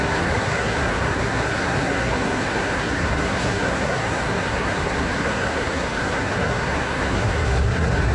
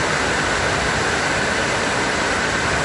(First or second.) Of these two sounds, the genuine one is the second